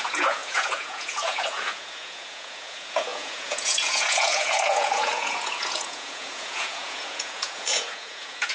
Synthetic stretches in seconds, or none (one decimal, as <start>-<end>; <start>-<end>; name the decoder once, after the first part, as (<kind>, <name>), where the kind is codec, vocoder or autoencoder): 0.0-8.5 (vocoder, Vocos)